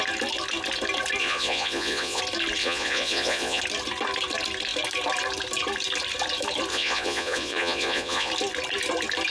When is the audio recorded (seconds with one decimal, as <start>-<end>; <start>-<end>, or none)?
0.0-1.2; 2.2-2.6; 3.6-6.7; 8.3-9.3